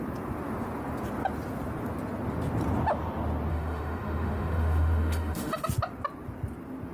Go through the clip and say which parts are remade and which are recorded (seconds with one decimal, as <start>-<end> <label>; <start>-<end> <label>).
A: 0.0-3.5 recorded; 3.5-5.6 remade; 5.6-6.9 recorded